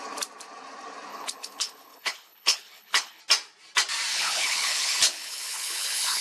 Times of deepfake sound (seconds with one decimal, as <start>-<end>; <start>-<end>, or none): 1.1-3.2; 4.1-6.2